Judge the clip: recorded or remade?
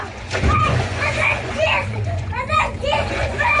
remade